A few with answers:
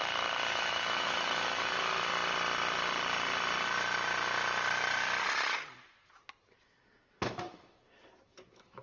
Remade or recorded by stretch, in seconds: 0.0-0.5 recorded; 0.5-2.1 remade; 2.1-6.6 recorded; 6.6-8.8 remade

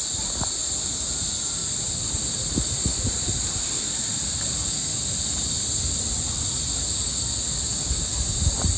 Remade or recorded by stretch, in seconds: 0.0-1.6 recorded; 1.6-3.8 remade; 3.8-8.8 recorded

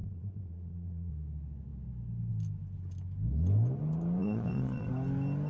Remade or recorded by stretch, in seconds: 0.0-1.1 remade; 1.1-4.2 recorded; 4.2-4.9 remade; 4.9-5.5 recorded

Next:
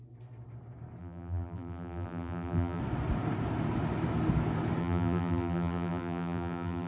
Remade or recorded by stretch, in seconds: 0.0-1.0 recorded; 1.0-2.8 remade; 2.8-4.8 recorded; 4.8-6.9 remade

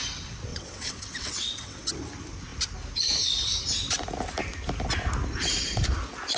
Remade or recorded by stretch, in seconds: 0.0-0.5 recorded; 0.5-1.9 remade; 1.9-6.4 recorded

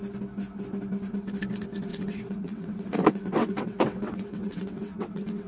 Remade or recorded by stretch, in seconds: 0.0-1.9 recorded; 1.9-5.5 remade

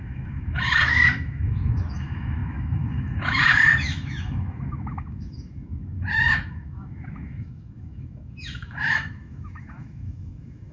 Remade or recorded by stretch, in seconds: 0.0-10.7 remade